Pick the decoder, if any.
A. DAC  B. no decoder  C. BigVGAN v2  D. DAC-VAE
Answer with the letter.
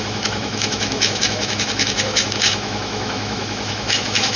D